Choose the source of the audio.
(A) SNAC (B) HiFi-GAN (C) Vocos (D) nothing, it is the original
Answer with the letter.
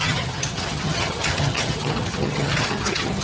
B